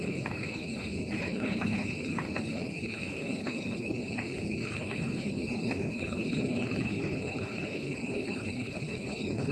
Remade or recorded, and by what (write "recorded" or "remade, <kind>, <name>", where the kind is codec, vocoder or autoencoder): remade, codec, HILCodec